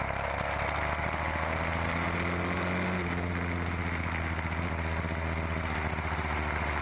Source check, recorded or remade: recorded